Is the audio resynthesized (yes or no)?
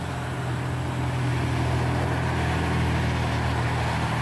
no